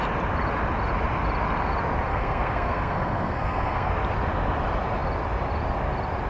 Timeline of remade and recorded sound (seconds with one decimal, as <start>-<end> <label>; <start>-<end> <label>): 0.0-2.1 recorded; 2.1-3.9 remade; 3.9-6.3 recorded